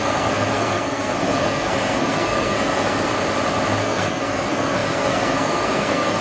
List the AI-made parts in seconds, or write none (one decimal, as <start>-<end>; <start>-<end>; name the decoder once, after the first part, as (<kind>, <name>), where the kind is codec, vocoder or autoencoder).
0.0-3.1 (codec, SNAC); 3.8-6.2